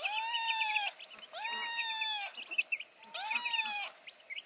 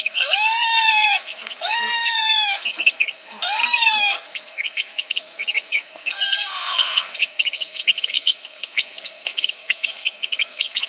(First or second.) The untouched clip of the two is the first